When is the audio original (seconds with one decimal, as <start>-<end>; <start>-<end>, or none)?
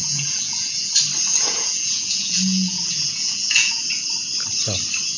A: 0.9-1.3; 3.9-5.2